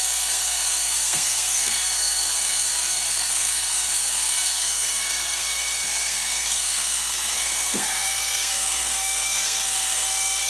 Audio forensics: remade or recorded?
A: remade